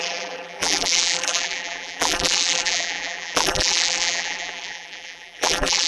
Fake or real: fake